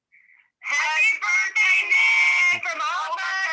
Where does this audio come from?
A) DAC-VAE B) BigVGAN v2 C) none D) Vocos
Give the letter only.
C